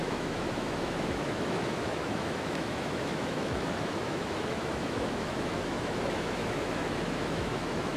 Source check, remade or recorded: remade